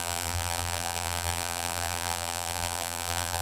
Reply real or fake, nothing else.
fake